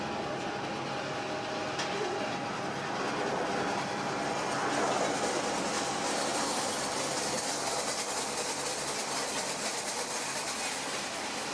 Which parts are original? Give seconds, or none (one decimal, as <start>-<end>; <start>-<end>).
0.0-11.5